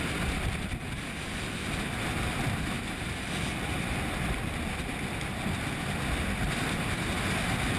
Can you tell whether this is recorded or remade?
recorded